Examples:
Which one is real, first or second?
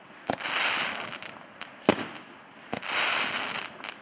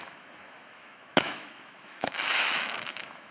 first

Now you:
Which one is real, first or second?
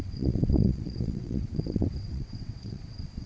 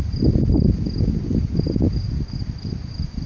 second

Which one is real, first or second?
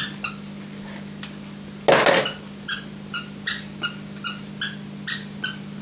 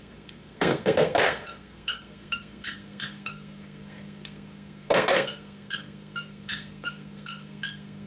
first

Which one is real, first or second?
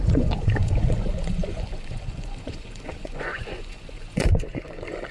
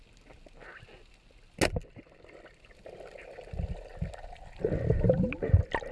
second